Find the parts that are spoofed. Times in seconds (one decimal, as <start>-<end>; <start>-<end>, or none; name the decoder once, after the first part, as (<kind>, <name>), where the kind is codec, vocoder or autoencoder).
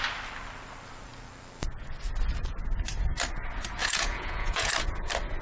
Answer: 3.8-4.7 (vocoder, Vocos)